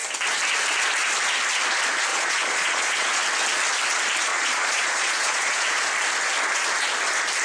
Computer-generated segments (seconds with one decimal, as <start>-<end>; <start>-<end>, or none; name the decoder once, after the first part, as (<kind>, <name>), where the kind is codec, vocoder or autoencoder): 2.1-3.2 (vocoder, Vocos); 4.3-5.7